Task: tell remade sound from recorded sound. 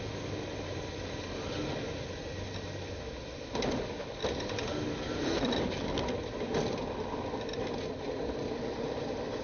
recorded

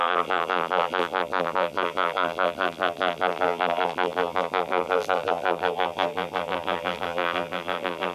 remade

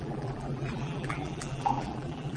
remade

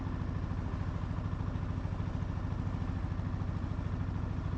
recorded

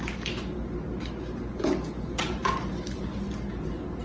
recorded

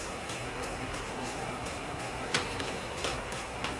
remade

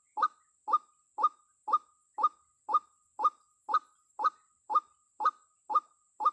recorded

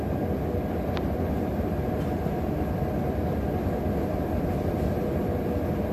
recorded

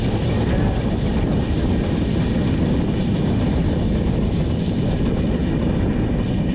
recorded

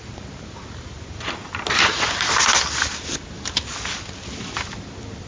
recorded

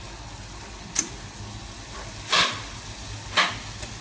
recorded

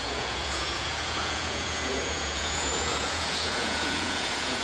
remade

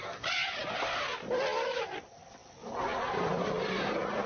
recorded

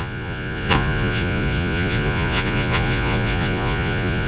remade